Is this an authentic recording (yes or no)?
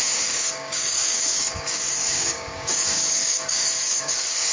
no